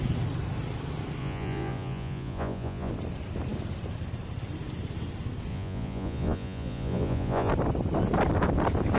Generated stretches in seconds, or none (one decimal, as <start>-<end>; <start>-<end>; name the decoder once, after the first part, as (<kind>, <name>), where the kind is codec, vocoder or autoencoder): 1.2-2.9 (vocoder, Vocos); 5.5-7.5